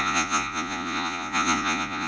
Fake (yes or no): yes